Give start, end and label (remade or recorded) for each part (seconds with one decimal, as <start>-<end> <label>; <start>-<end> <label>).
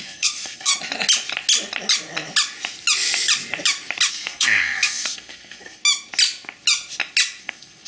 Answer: 0.0-0.7 remade; 0.7-4.1 recorded; 4.1-5.8 remade; 5.8-7.4 recorded; 7.4-7.9 remade